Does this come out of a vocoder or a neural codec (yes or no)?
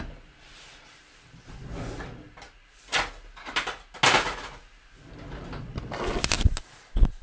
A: no